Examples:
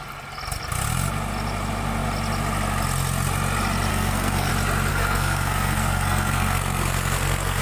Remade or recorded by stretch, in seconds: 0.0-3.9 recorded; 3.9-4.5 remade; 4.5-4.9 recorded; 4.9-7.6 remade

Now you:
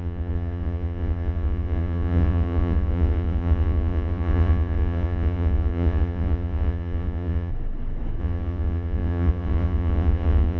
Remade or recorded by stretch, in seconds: 0.0-7.5 remade; 7.5-8.2 recorded; 8.2-10.6 remade

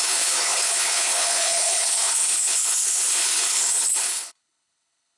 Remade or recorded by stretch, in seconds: 0.0-5.2 remade

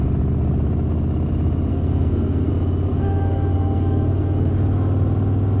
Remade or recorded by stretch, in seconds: 0.0-1.7 recorded; 1.7-2.5 remade; 2.5-2.9 recorded; 2.9-4.5 remade; 4.5-5.6 recorded